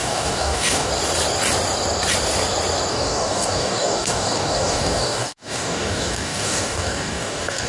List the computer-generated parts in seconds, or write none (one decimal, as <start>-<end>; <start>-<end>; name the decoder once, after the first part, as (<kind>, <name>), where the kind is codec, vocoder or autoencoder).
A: 0.0-0.9 (codec, DAC); 2.9-7.7